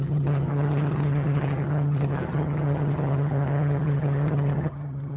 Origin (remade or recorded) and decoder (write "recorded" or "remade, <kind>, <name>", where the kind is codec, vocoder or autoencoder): remade, vocoder, HiFi-GAN